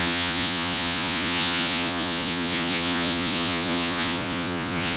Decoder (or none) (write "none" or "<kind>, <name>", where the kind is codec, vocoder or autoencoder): vocoder, Vocos